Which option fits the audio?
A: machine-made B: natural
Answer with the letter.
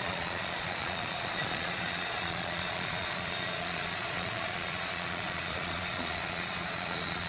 A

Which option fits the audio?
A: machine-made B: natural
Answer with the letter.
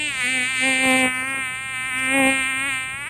B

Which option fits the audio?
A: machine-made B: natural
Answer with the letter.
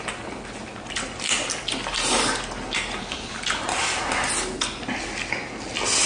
B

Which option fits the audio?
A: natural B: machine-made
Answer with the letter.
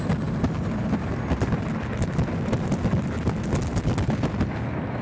A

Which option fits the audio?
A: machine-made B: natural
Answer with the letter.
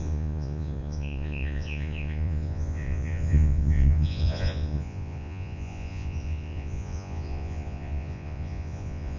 A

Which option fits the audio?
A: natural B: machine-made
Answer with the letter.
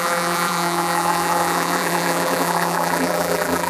B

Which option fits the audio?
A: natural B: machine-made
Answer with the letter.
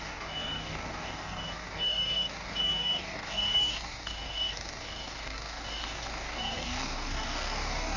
B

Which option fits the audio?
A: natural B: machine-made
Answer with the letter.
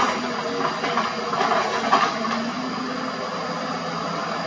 A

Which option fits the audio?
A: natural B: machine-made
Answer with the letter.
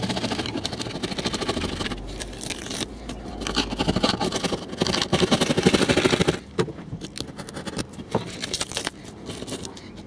A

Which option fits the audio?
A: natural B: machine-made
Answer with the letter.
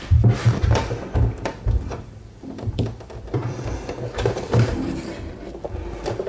B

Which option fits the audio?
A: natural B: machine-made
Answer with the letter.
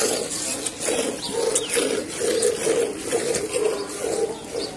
A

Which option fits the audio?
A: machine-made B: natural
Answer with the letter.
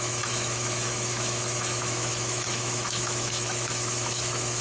A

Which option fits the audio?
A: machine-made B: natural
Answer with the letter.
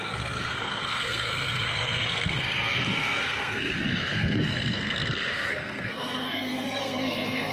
A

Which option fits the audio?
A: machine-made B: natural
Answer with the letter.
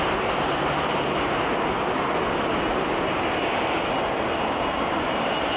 B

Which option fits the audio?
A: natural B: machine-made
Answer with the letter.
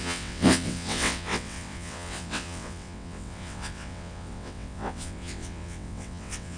B